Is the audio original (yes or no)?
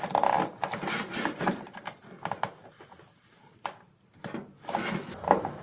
yes